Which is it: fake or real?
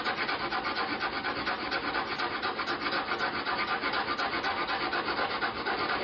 real